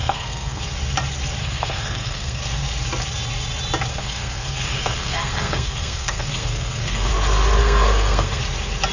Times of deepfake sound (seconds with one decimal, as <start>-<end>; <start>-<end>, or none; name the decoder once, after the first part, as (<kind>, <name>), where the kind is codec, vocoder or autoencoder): 0.0-0.6 (codec, SNAC); 1.4-2.4; 3.9-7.1; 7.6-8.4